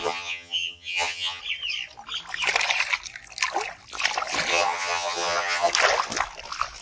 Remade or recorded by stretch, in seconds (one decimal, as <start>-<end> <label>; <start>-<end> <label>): 0.0-1.4 remade; 1.4-4.5 recorded; 4.5-5.7 remade; 5.7-6.8 recorded